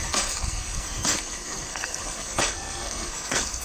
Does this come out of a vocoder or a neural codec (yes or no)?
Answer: yes